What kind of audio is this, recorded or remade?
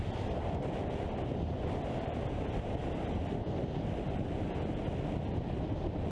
recorded